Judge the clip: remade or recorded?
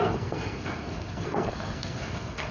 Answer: remade